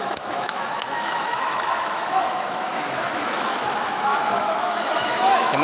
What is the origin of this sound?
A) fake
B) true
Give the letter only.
A